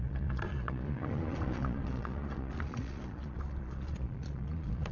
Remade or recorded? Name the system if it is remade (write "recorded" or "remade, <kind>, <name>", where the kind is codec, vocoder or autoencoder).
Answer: remade, vocoder, Vocos